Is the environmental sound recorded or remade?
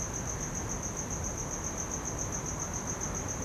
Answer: recorded